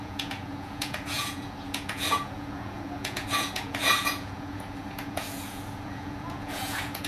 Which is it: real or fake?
fake